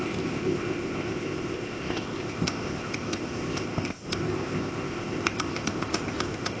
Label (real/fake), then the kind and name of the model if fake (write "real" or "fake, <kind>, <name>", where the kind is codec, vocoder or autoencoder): fake, codec, ZipCodec